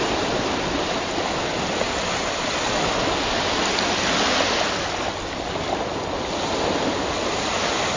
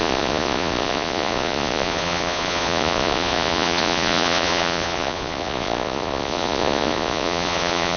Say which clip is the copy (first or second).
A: second